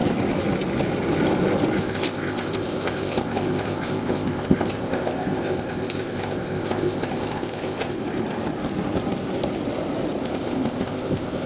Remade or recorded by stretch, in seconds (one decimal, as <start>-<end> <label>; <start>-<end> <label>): 0.0-1.8 recorded; 1.8-8.0 remade; 8.0-10.2 recorded; 10.2-11.5 remade